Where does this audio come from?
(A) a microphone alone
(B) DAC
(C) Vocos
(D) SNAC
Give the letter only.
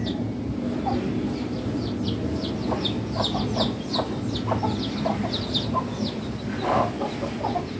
A